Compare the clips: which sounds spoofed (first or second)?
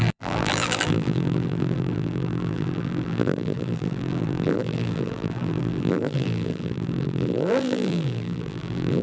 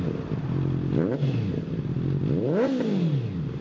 first